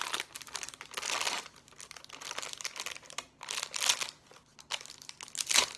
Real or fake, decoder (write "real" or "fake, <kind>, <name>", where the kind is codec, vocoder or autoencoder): real